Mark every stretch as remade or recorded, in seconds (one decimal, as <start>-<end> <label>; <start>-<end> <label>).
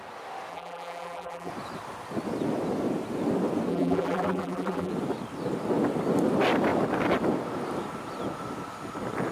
0.0-0.5 recorded; 0.5-1.5 remade; 1.5-3.7 recorded; 3.7-4.9 remade; 4.9-9.3 recorded